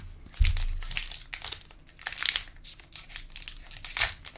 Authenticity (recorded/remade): recorded